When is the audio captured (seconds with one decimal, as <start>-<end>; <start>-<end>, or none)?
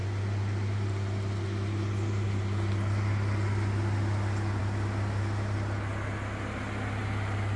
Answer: 0.0-7.6